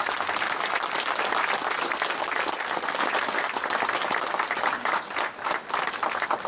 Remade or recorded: recorded